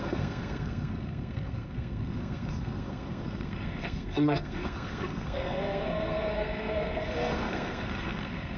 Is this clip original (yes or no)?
no